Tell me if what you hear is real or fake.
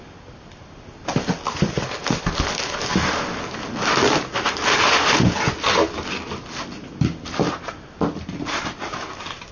real